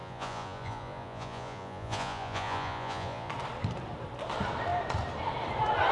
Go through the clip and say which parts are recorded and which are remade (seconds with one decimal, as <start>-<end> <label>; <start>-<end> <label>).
0.0-3.3 remade; 3.3-5.9 recorded